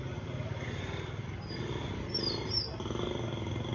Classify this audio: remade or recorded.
recorded